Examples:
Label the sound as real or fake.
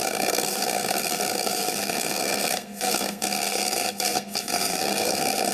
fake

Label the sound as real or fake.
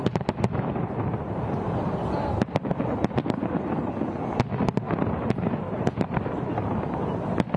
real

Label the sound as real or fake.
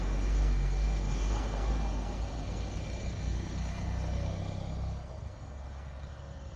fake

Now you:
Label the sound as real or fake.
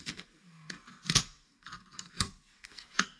fake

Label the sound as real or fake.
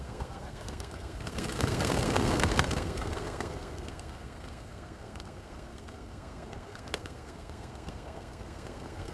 fake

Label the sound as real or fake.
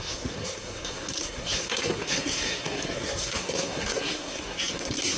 fake